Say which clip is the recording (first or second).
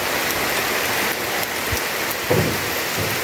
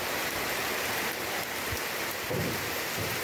first